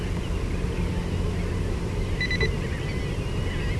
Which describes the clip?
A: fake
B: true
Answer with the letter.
B